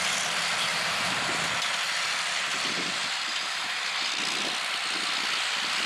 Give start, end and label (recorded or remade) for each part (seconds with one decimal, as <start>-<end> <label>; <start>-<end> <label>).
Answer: 0.0-0.7 recorded; 0.7-1.3 remade; 1.3-3.3 recorded; 3.3-4.1 remade; 4.1-5.9 recorded